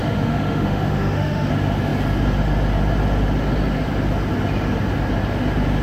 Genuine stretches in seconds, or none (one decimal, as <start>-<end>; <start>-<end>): 1.5-5.8